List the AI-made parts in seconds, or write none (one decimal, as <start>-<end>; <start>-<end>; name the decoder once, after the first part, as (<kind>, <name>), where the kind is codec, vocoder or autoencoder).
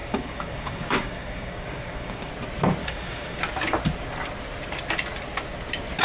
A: 0.0-2.3 (codec, DAC); 2.8-3.4